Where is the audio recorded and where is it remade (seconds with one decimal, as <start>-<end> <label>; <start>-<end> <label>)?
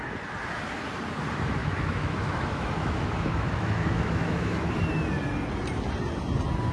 0.0-1.6 recorded; 1.6-4.7 remade; 4.7-6.7 recorded